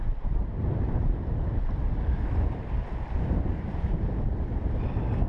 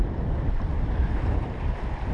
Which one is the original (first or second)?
first